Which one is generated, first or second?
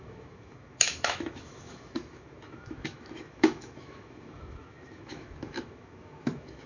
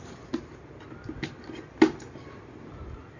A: first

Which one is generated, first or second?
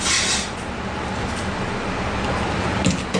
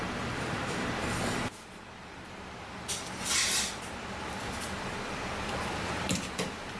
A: second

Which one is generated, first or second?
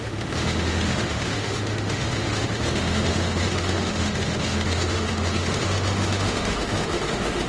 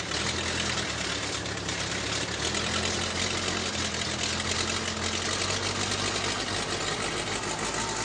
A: first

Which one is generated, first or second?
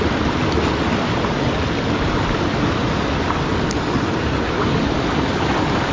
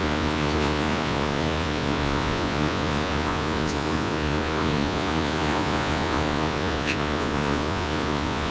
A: second